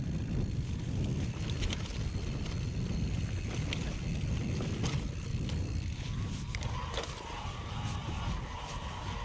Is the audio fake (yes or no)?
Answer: yes